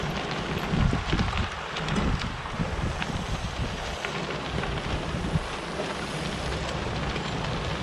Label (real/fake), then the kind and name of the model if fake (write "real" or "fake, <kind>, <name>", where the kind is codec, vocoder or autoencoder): real